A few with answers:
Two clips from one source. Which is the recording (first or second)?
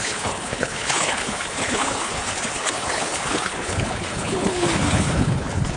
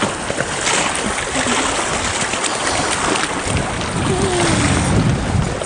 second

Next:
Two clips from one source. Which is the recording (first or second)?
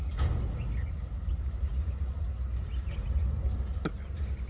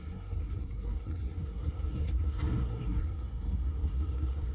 first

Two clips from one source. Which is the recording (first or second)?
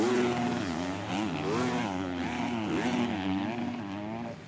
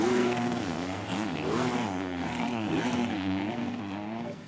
first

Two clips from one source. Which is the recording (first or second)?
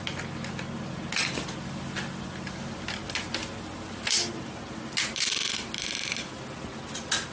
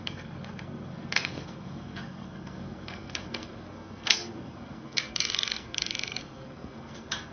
first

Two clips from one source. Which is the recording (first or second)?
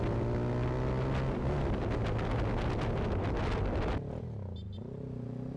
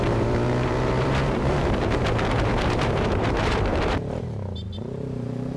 first